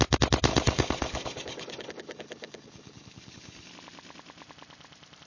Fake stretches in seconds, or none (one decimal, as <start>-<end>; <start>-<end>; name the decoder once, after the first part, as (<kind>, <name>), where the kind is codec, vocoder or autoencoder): 0.5-3.7 (codec, DAC)